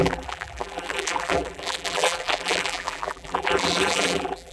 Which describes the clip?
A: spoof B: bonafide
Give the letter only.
A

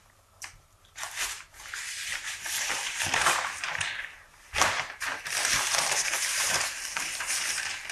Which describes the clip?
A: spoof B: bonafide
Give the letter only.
A